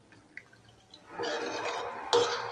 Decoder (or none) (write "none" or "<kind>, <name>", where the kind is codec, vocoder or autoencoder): none